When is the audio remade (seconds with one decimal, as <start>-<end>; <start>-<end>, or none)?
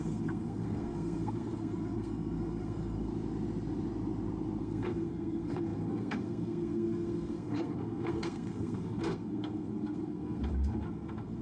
0.0-3.1; 4.6-11.4